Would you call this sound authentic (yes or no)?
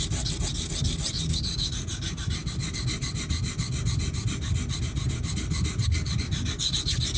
yes